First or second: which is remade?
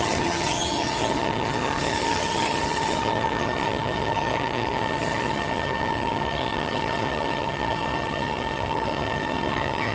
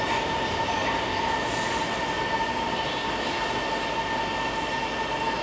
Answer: first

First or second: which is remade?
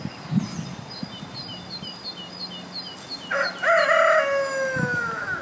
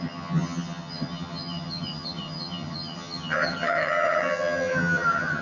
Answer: second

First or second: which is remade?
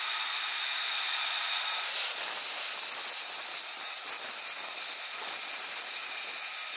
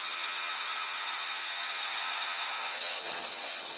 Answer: second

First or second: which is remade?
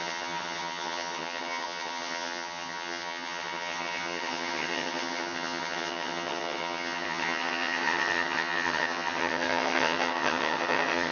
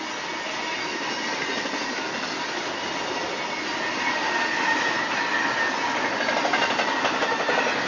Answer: first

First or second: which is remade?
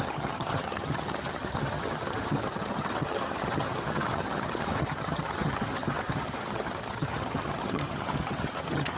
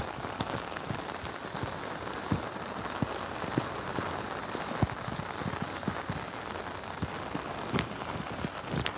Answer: first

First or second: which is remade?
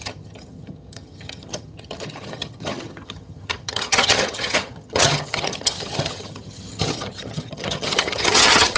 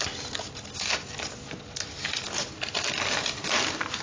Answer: first